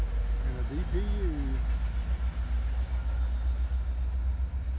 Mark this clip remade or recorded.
recorded